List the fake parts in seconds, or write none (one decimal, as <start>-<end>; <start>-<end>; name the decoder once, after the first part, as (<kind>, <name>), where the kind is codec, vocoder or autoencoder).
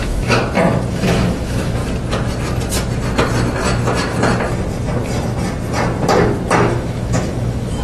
0.0-0.4 (autoencoder, DAC-VAE); 0.9-1.8; 6.5-7.8